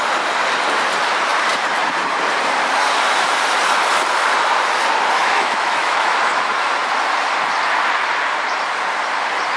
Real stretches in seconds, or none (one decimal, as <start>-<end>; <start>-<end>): 0.0-5.2; 6.1-9.6